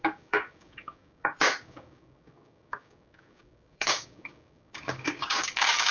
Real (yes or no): no